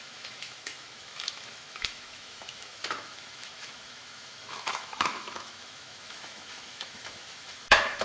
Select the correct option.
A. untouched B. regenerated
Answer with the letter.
B